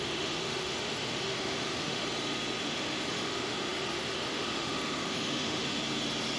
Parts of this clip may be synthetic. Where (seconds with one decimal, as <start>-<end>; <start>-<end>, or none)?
0.0-2.0; 2.6-5.8